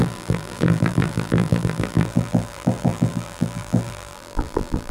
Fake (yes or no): yes